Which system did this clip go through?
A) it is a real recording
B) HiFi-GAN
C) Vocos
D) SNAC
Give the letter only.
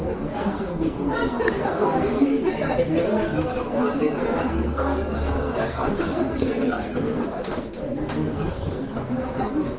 D